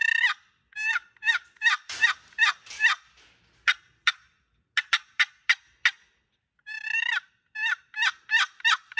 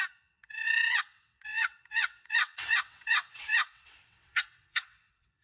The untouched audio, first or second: first